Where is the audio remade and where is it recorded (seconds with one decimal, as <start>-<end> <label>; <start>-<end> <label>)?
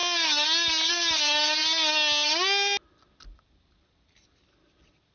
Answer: 0.0-5.1 recorded